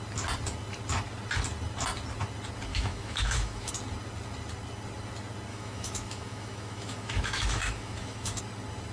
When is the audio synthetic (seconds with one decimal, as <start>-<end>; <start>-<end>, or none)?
2.7-3.7; 5.5-8.4